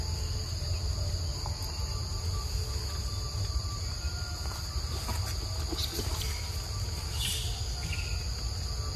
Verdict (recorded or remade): recorded